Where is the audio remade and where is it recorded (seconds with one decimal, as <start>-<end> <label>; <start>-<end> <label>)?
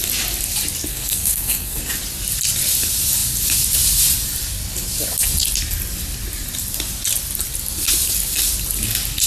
0.0-0.9 recorded; 0.9-1.8 remade; 1.8-9.3 recorded